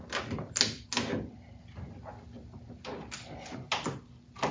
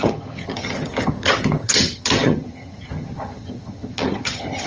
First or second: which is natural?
first